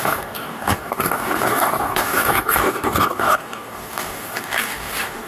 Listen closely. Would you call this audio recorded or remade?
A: remade